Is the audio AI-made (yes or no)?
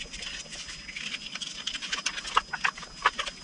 no